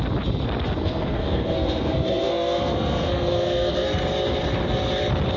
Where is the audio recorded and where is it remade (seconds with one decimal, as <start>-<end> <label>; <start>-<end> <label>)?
0.0-0.8 recorded; 0.8-4.0 remade; 4.0-5.4 recorded